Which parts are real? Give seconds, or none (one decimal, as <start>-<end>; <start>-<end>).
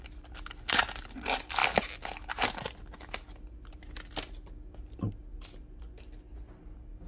0.0-7.1